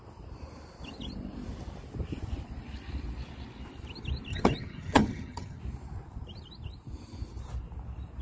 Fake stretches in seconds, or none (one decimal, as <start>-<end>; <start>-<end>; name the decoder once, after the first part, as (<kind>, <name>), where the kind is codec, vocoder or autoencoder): 4.3-5.6 (vocoder, HiFi-GAN)